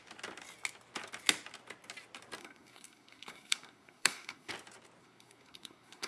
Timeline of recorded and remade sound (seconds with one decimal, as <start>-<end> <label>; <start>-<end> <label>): 0.0-2.4 recorded; 2.4-4.5 remade; 4.5-5.0 recorded; 5.0-6.1 remade